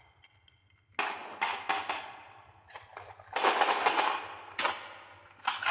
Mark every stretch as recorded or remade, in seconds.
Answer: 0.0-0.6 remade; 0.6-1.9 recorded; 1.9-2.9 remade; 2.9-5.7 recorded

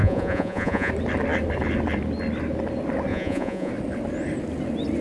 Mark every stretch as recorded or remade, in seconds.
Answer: 0.0-0.9 remade; 0.9-3.1 recorded; 3.1-3.7 remade; 3.7-5.0 recorded